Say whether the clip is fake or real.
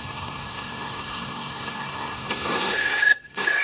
fake